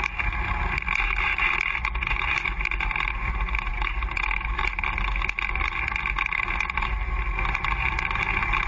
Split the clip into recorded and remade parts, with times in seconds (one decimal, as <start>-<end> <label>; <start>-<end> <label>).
0.0-8.7 recorded